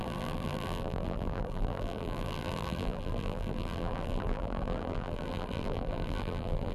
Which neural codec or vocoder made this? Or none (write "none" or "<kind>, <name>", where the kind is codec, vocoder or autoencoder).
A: vocoder, BigVGAN v2